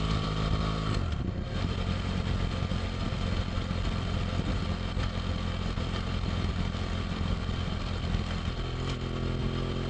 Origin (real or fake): real